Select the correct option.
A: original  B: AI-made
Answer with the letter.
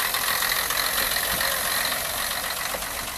A